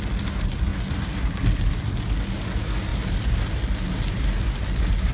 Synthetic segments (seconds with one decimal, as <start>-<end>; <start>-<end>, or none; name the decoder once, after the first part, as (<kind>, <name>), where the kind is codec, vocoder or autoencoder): none